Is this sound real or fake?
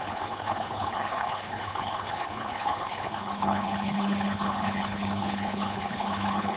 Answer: fake